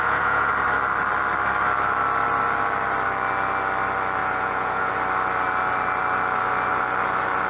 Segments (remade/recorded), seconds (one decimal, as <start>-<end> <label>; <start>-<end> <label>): 0.0-0.5 remade; 0.5-4.2 recorded; 4.2-4.9 remade; 4.9-7.5 recorded